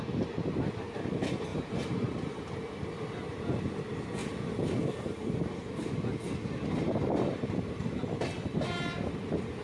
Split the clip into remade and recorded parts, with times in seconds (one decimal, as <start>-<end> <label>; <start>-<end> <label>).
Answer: 0.0-1.5 recorded; 1.5-2.1 remade; 2.1-7.3 recorded; 7.3-7.8 remade; 7.8-9.6 recorded